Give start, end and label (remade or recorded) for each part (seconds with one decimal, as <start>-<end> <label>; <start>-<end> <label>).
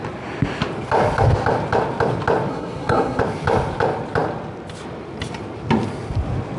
0.0-2.5 recorded; 2.5-3.2 remade; 3.2-6.6 recorded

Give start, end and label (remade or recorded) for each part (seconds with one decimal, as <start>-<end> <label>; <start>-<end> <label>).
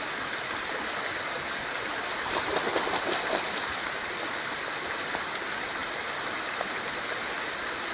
0.0-7.9 recorded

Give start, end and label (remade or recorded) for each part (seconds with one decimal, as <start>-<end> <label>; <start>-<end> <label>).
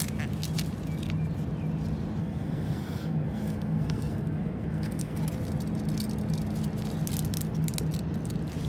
0.0-2.2 recorded; 2.2-5.2 remade; 5.2-8.7 recorded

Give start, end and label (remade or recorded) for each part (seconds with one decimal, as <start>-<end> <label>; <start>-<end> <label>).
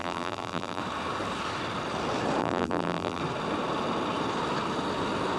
0.0-0.8 remade; 0.8-2.4 recorded; 2.4-3.2 remade; 3.2-5.4 recorded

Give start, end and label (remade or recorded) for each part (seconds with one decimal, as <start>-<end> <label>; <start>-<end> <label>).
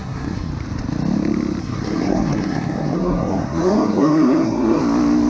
0.0-0.5 remade; 0.5-1.6 recorded; 1.6-4.8 remade; 4.8-5.3 recorded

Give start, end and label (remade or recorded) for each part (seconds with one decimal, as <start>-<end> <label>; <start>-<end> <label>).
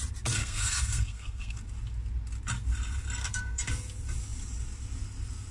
0.0-0.4 recorded; 0.4-1.6 remade; 1.6-3.2 recorded; 3.2-3.7 remade; 3.7-5.5 recorded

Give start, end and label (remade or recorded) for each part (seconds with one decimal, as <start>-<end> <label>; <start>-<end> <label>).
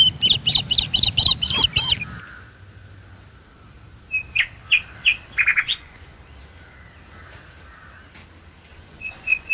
0.0-5.5 recorded; 5.5-6.2 remade; 6.2-8.7 recorded; 8.7-9.5 remade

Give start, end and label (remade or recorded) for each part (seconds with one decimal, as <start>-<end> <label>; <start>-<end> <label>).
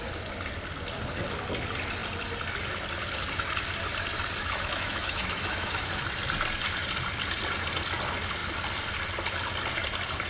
0.0-4.4 recorded; 4.4-6.0 remade; 6.0-10.3 recorded